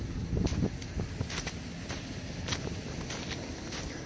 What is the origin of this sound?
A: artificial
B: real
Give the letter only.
B